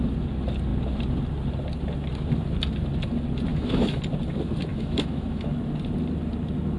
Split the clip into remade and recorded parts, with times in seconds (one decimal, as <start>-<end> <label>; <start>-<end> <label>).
0.0-3.5 recorded; 3.5-4.0 remade; 4.0-4.7 recorded; 4.7-5.6 remade; 5.6-6.8 recorded

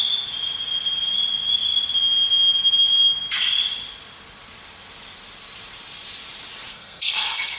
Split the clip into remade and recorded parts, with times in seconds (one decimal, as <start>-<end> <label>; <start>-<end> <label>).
0.0-6.7 recorded; 6.7-7.6 remade

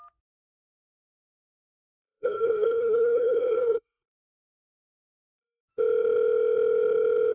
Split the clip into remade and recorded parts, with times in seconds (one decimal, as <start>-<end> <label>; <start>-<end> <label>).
0.0-1.2 recorded; 1.2-5.6 remade; 5.6-7.3 recorded

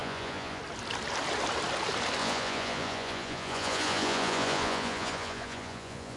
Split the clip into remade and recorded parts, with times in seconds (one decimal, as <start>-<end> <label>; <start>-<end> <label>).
0.0-0.6 remade; 0.6-2.2 recorded; 2.2-6.2 remade

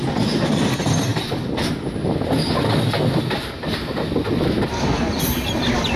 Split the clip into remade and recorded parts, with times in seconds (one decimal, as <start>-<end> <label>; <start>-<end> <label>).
0.0-6.0 recorded